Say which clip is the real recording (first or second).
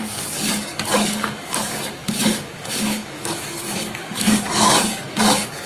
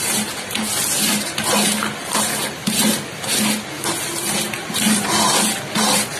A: second